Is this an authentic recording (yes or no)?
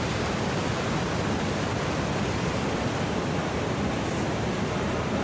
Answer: no